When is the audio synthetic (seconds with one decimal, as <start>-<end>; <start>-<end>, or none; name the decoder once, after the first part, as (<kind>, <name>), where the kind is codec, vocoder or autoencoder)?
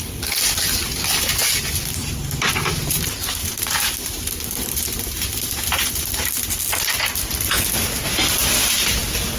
2.0-4.8 (vocoder, BigVGAN v2); 8.4-9.0